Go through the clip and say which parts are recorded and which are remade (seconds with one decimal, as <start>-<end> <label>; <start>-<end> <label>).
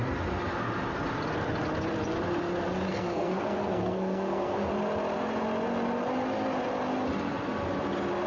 0.0-2.9 recorded; 2.9-4.7 remade; 4.7-8.3 recorded